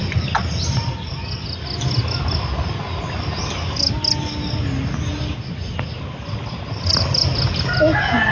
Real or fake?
real